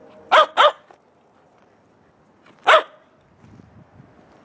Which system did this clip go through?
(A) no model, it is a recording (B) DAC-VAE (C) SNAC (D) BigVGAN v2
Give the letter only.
A